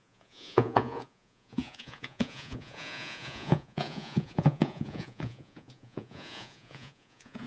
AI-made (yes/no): yes